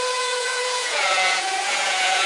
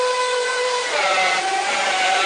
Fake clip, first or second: first